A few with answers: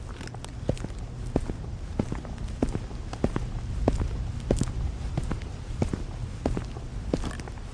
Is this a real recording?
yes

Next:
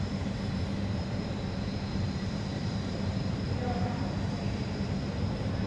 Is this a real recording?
no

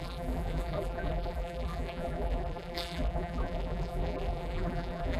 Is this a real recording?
no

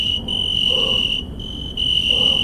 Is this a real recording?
no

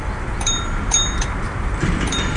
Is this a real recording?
no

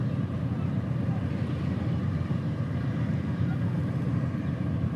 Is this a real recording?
no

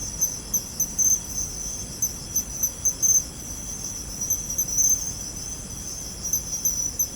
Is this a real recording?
yes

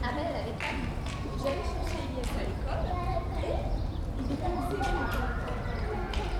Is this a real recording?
yes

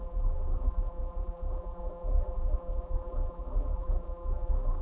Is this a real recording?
no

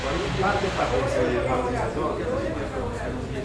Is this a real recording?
yes